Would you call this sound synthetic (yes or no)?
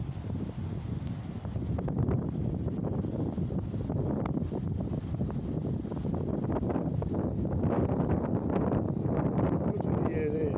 yes